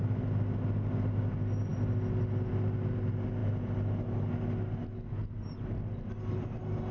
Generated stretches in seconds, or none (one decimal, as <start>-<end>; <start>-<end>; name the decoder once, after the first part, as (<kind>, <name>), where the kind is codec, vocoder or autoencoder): none